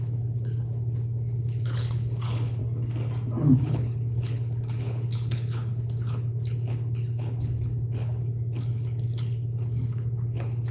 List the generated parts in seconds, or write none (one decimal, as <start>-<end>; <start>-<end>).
0.0-2.6; 3.4-10.7

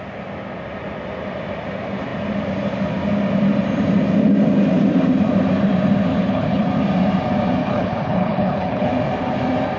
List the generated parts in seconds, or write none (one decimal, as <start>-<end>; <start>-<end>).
6.1-6.7; 7.6-8.9

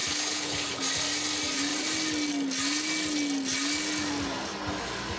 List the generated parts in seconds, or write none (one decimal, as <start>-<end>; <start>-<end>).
0.0-0.8

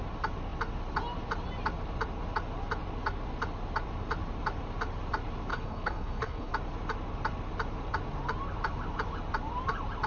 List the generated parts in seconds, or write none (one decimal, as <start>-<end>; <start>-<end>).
5.5-6.5

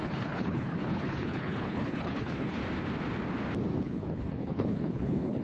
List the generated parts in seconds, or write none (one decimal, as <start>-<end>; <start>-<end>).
0.0-2.6; 3.8-5.4

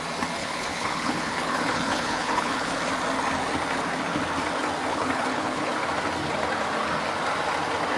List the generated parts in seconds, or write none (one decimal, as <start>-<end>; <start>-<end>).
0.4-2.8; 4.9-5.7

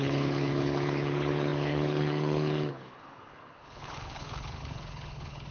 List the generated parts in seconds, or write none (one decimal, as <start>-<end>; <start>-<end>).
0.0-5.5

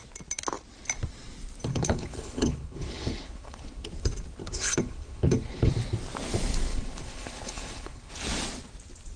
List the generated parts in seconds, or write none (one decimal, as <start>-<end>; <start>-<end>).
1.7-3.9; 4.4-5.7; 6.7-8.1